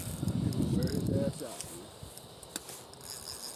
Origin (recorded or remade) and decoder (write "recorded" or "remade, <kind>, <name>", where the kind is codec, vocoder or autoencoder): recorded